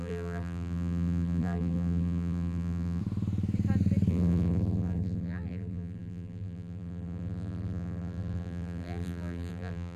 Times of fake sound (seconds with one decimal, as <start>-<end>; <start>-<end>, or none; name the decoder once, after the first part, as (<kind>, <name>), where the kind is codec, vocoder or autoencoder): 0.0-3.0 (vocoder, BigVGAN v2); 4.1-10.0